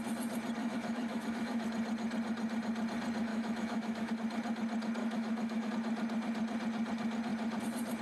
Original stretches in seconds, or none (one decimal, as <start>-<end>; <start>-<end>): 0.0-0.6; 1.6-3.3; 4.1-5.0; 5.7-8.0